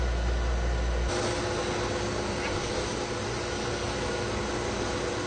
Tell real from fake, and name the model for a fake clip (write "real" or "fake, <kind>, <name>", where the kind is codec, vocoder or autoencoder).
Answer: real